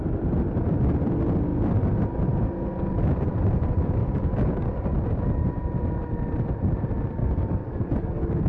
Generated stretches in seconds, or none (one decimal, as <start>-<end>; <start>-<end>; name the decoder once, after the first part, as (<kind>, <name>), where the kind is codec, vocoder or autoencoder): 4.0-4.9 (codec, DAC); 7.2-8.5